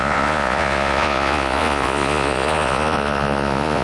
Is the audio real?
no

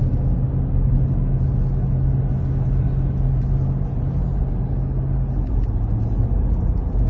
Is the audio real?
yes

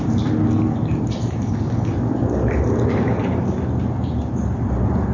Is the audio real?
yes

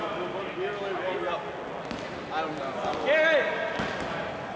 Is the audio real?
yes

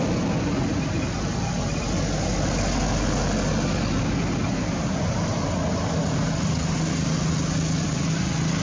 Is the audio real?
yes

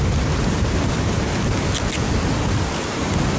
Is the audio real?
yes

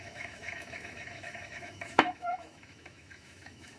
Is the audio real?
no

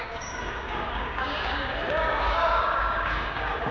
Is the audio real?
no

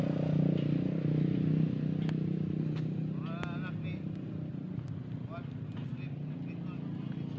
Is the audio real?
yes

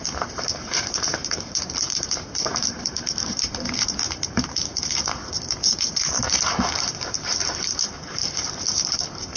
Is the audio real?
no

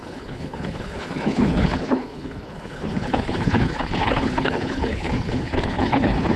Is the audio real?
no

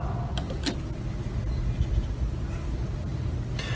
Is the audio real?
yes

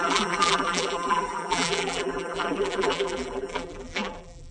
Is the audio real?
no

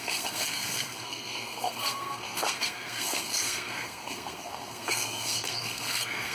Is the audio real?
no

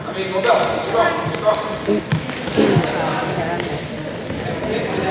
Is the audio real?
yes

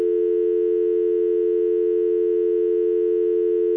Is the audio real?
yes